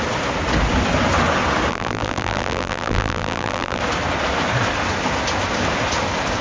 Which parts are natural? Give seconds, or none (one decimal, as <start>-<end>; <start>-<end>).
0.0-1.7; 3.8-6.4